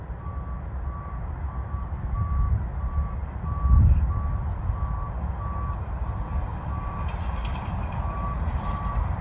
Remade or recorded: recorded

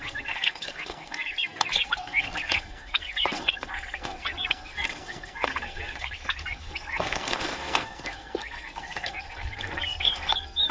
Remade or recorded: remade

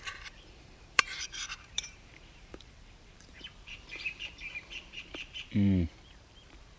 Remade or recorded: remade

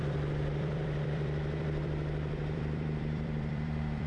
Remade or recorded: remade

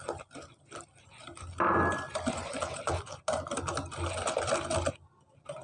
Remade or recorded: recorded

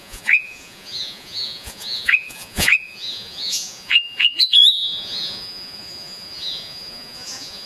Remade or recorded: remade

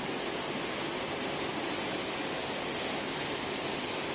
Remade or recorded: recorded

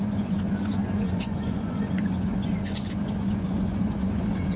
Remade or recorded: remade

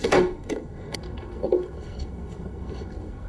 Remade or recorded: remade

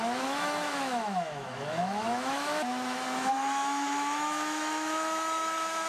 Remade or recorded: remade